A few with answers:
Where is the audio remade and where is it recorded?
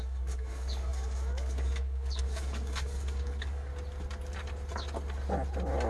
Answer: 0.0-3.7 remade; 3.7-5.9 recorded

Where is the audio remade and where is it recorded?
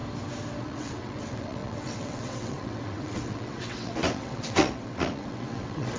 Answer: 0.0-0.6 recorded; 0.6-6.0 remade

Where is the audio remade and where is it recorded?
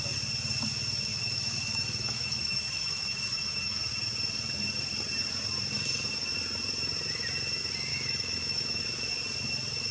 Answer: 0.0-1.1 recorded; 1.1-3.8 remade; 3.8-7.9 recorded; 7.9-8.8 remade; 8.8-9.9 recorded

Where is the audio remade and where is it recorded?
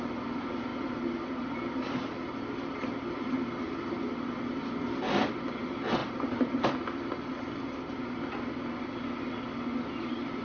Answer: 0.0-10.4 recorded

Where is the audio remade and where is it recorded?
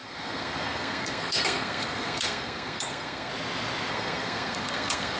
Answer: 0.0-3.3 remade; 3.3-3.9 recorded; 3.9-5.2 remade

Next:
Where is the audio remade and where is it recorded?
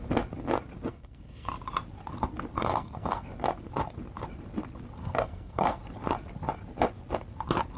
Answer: 0.0-0.9 recorded; 0.9-1.5 remade; 1.5-2.6 recorded; 2.6-3.3 remade; 3.3-5.0 recorded; 5.0-5.8 remade; 5.8-7.8 recorded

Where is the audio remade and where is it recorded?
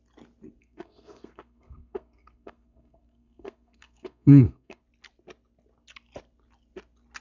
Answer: 0.0-0.6 recorded; 0.6-4.8 remade; 4.8-7.2 recorded